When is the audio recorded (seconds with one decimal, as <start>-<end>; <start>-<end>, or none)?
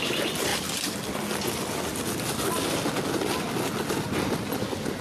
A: 0.0-5.0